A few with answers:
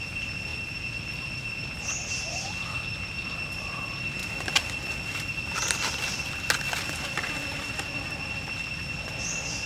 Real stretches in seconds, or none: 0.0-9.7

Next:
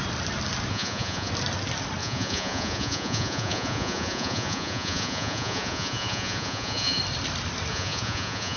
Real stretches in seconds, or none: 0.0-0.7; 1.3-2.0; 7.0-7.7